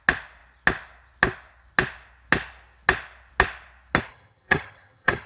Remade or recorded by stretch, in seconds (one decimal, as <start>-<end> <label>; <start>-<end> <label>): 0.0-4.1 recorded; 4.1-5.3 remade